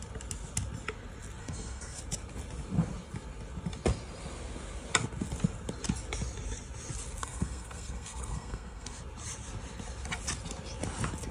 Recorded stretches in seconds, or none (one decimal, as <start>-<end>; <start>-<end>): 0.0-1.4; 2.0-7.2; 9.0-11.3